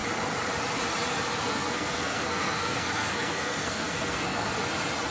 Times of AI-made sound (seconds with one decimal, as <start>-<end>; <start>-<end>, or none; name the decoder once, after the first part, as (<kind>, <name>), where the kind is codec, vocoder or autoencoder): 1.4-4.5 (codec, SNAC)